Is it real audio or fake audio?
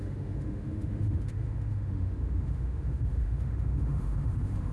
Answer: fake